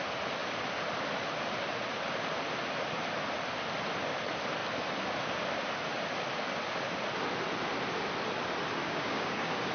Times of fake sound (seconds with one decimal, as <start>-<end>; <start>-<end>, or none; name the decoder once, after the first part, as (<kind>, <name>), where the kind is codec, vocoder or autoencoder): 8.8-9.7 (codec, DAC)